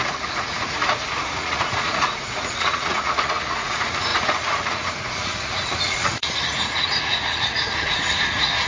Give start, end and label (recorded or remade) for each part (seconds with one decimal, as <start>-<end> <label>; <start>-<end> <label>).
0.0-8.7 remade